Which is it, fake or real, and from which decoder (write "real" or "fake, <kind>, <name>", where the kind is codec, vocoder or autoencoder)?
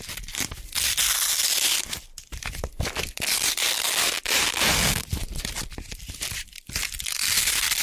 real